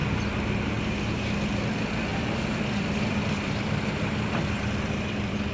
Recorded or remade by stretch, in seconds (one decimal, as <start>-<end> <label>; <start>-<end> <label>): 0.0-2.1 recorded; 2.1-5.5 remade